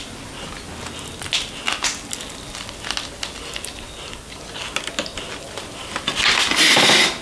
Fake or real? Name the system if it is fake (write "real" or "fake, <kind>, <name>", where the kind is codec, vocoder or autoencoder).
real